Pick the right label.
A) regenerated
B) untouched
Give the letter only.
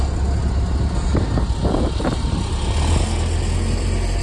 B